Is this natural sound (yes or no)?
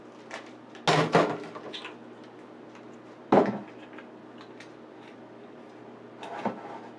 yes